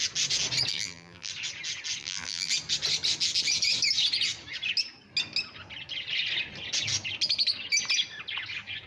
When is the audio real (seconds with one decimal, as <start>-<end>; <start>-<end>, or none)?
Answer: 0.0-0.7; 1.3-2.0; 2.5-8.9